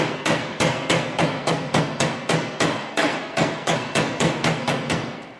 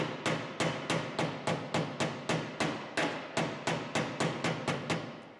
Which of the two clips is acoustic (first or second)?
second